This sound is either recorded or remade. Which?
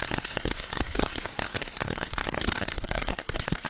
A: remade